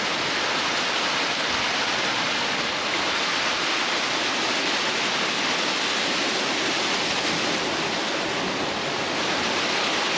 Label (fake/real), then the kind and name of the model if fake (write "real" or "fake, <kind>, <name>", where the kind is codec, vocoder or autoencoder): real